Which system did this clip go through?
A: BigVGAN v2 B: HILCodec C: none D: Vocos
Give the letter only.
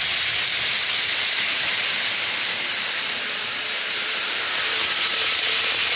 C